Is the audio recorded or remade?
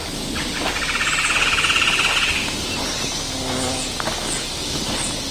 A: recorded